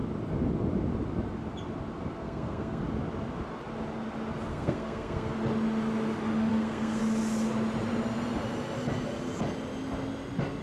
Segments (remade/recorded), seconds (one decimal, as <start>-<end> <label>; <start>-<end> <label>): 0.0-2.2 recorded; 2.2-2.8 remade; 2.8-4.5 recorded; 4.5-5.3 remade; 5.3-6.5 recorded; 6.5-7.0 remade; 7.0-10.6 recorded